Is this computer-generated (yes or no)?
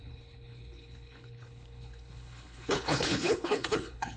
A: yes